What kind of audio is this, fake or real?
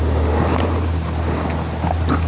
real